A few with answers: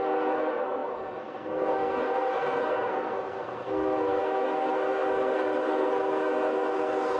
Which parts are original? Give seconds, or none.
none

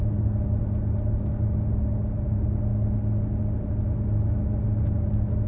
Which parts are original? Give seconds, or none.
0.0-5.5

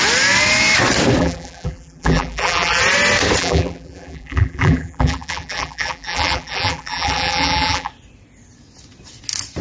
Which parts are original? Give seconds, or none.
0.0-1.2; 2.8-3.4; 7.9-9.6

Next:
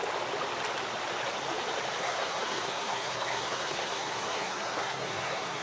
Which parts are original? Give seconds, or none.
0.0-2.0

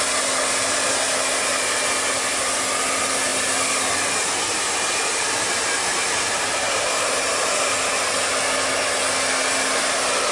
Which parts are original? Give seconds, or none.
0.0-5.9; 7.7-10.3

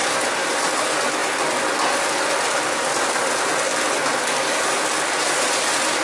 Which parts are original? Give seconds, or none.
0.7-1.2; 2.9-3.7; 4.8-6.0

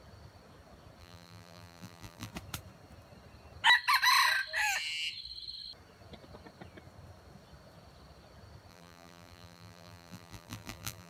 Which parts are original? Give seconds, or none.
0.0-1.0; 2.3-8.7

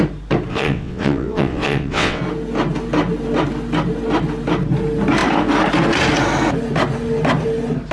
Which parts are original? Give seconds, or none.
0.0-0.5; 2.2-7.9